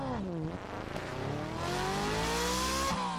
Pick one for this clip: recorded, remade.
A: recorded